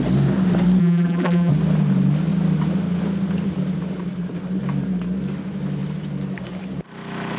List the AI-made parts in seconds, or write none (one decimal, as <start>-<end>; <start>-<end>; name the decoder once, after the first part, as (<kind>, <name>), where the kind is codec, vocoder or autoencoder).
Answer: 0.8-1.5 (vocoder, BigVGAN v2)